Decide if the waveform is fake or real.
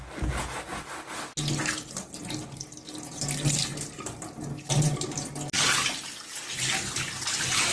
real